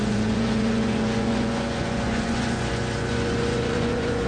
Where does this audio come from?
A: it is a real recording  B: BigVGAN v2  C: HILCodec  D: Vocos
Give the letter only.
D